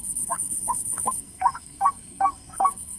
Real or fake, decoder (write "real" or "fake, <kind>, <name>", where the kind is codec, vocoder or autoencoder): fake, codec, SNAC